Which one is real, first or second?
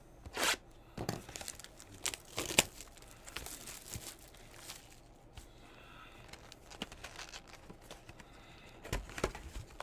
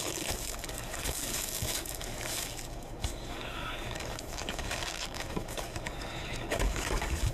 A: first